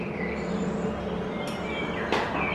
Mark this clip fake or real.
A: real